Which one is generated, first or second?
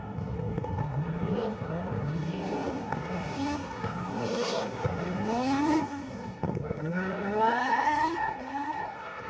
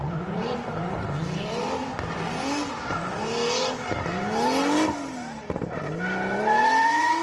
first